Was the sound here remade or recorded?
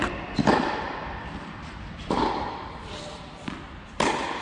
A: remade